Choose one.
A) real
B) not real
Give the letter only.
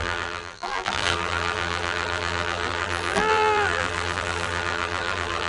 B